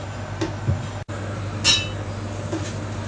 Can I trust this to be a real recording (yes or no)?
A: yes